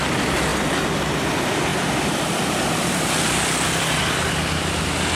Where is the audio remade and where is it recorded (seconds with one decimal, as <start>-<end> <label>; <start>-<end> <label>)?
0.0-0.5 remade; 0.5-1.0 recorded; 1.0-5.1 remade